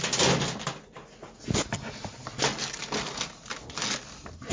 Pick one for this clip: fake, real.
real